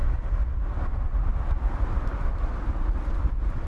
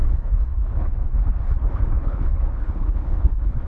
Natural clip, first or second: first